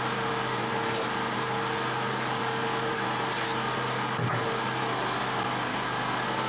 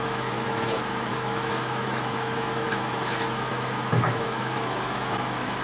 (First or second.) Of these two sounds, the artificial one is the second